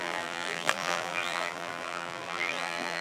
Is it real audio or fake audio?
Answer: fake